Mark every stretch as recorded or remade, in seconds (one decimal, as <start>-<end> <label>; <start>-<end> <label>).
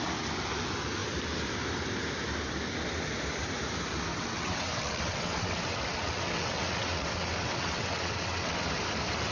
0.0-4.1 recorded; 4.1-8.7 remade; 8.7-9.3 recorded